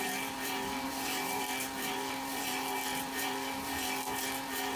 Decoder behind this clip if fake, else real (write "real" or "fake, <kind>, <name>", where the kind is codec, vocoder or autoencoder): fake, vocoder, BigVGAN v2